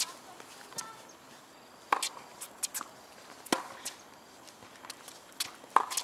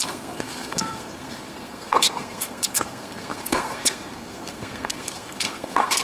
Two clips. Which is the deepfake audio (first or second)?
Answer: second